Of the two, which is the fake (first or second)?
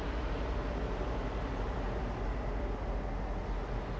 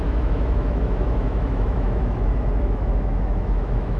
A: second